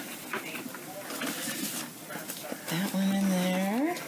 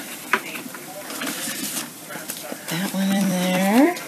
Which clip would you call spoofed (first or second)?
second